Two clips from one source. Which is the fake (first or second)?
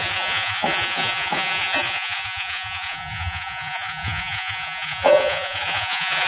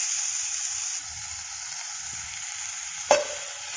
first